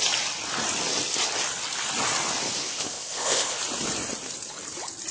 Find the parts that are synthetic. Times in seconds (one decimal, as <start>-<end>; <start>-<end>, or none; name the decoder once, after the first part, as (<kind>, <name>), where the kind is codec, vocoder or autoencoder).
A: 2.6-3.6 (codec, ZipCodec)